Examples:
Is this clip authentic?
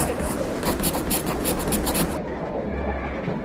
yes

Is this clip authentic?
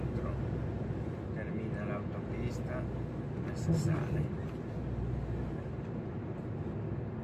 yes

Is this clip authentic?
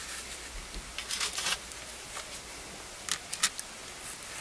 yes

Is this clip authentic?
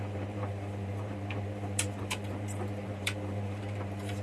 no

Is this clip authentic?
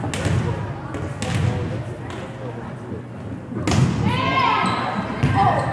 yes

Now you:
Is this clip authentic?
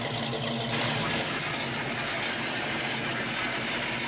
yes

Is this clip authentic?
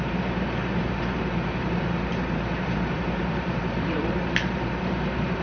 no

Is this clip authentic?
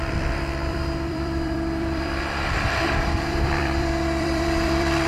no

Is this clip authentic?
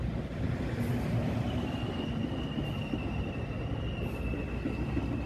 yes